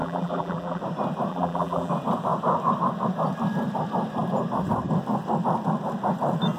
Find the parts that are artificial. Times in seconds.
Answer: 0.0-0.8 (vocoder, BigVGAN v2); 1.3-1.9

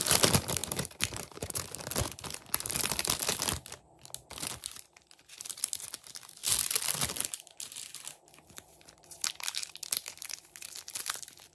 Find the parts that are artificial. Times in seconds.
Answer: 0.6-1.6 (vocoder, BigVGAN v2)

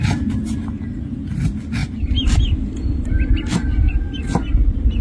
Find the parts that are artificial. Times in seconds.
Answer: none